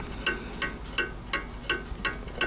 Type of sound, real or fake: real